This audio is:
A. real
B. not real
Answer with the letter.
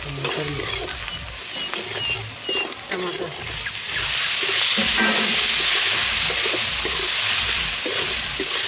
A